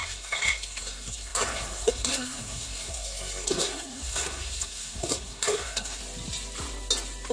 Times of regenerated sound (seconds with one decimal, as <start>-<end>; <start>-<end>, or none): 0.0-6.0